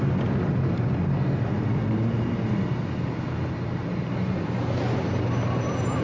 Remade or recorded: recorded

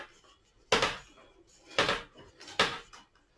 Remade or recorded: recorded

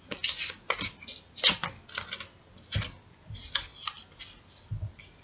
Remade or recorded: recorded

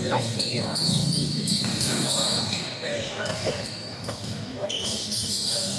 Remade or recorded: remade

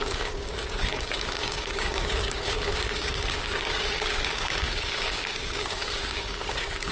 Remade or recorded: remade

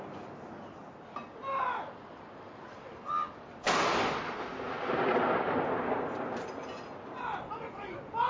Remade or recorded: recorded